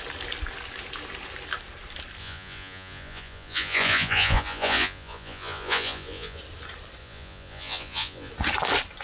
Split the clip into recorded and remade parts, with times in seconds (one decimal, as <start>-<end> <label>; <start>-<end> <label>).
0.0-2.2 recorded; 2.2-6.4 remade; 6.4-7.0 recorded; 7.0-8.3 remade; 8.3-9.0 recorded